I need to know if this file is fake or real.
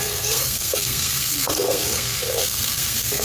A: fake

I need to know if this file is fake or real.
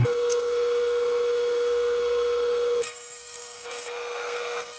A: fake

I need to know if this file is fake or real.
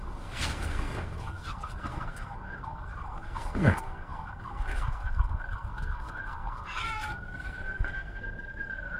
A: fake